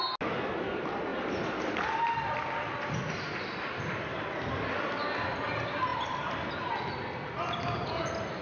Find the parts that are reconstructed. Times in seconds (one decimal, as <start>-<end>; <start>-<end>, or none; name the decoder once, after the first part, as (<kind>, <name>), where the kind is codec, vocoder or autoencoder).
1.1-2.0 (vocoder, BigVGAN v2); 5.9-6.7